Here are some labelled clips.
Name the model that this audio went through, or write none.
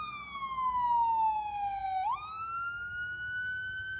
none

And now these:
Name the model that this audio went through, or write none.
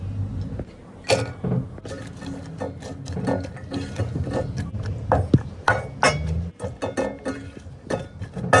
none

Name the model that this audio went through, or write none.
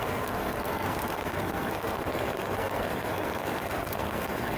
codec, SNAC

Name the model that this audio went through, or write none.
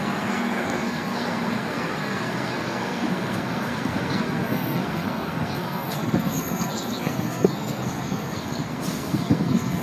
codec, SNAC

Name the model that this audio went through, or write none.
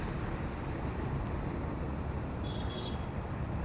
none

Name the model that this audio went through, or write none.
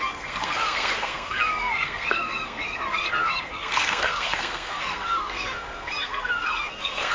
codec, SNAC